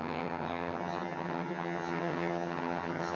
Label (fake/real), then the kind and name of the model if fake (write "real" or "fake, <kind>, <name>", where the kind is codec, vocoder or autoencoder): fake, vocoder, HiFi-GAN